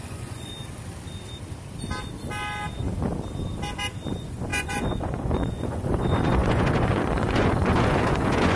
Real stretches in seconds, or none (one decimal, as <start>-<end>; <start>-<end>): 0.5-4.1